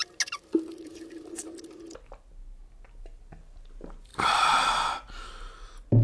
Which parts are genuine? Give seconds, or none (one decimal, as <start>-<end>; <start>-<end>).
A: 0.0-0.7; 1.6-4.1; 5.1-6.0

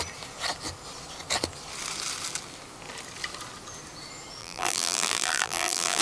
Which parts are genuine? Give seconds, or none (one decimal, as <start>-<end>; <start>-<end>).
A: 0.0-4.4

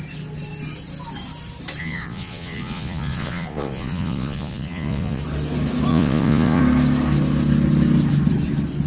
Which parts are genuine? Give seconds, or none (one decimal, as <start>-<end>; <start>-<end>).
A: 0.0-1.8; 5.2-5.9; 6.6-8.9